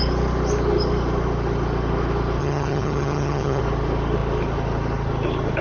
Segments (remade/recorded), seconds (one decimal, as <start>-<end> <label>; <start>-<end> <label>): 0.0-2.4 recorded; 2.4-3.6 remade; 3.6-5.6 recorded